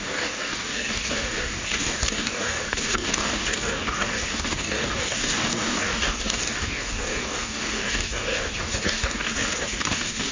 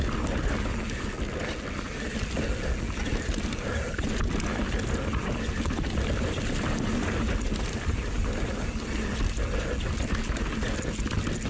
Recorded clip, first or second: second